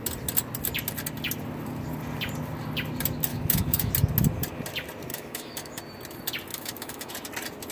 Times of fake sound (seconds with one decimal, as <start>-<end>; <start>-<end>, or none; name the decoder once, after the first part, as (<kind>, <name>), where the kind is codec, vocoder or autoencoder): 3.3-3.9 (autoencoder, DAC-VAE); 5.1-5.8; 6.5-7.1